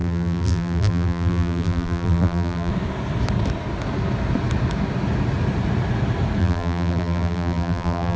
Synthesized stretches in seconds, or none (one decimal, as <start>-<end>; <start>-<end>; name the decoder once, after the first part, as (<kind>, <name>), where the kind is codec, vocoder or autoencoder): 0.0-2.7 (vocoder, BigVGAN v2); 6.4-8.2